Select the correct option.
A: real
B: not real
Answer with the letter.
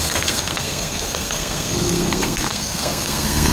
B